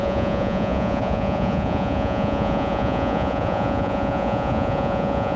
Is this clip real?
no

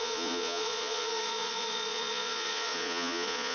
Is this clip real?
no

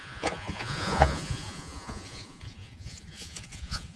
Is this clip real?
no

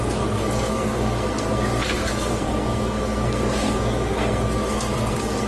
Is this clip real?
no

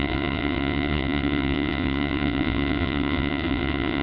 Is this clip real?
no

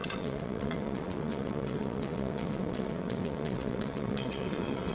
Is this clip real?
no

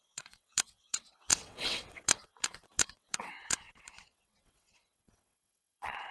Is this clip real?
no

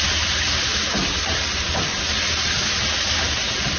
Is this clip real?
yes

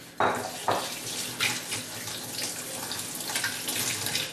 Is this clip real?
yes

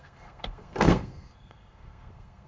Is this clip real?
no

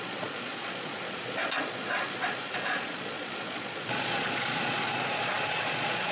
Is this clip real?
no